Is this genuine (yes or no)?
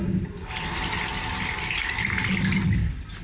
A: yes